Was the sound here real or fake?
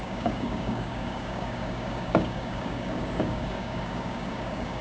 fake